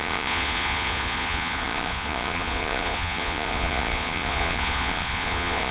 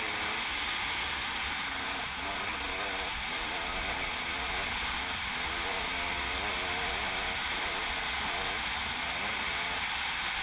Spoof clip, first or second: first